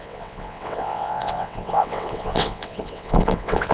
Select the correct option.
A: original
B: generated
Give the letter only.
B